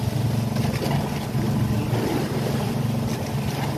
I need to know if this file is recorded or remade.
recorded